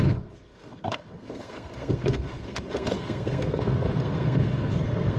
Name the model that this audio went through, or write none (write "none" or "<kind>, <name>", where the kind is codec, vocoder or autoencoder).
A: codec, SNAC